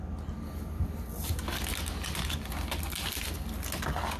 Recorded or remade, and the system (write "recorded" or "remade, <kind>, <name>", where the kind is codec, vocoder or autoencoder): recorded